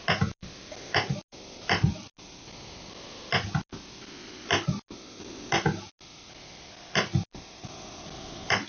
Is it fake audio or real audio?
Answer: real